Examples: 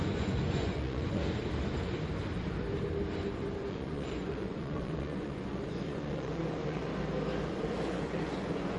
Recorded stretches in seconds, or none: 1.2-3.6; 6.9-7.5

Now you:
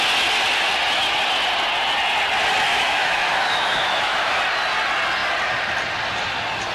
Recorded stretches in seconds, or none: 0.0-2.7; 4.4-6.7

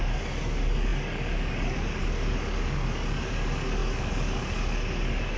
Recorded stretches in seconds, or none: none

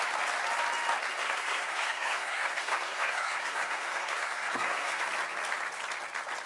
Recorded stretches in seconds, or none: 0.0-1.2; 5.1-6.5

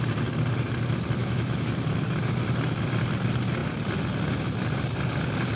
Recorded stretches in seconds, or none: 0.0-1.2; 1.7-5.6

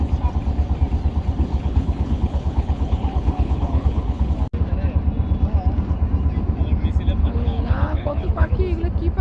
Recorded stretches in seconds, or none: 0.0-1.5; 4.3-7.2; 8.6-9.2